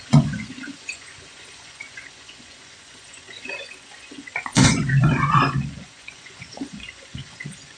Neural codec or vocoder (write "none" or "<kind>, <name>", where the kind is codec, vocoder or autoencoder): vocoder, Vocos